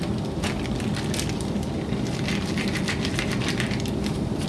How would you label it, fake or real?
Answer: real